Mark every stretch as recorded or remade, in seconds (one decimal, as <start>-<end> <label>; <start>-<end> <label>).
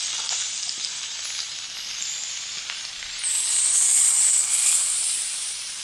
0.0-4.6 recorded; 4.6-5.8 remade